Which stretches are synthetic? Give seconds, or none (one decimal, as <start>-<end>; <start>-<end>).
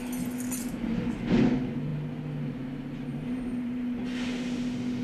0.6-1.2; 3.1-4.0